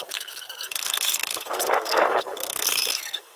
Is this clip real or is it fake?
fake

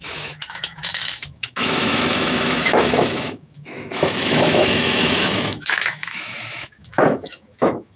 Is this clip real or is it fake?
fake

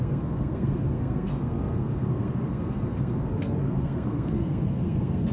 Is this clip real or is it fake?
fake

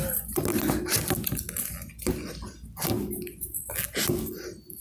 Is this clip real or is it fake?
real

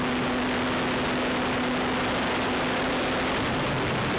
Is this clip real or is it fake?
real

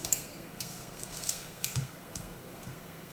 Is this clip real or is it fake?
fake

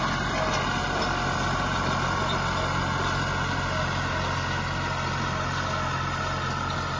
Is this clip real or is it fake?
real